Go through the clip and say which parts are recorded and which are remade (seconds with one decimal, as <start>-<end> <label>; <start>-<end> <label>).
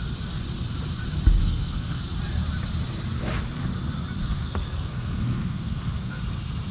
0.0-1.4 recorded; 1.4-2.0 remade; 2.0-4.2 recorded; 4.2-6.2 remade; 6.2-6.7 recorded